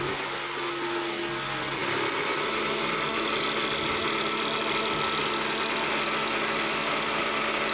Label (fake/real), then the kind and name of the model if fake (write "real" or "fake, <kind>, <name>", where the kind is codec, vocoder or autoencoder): real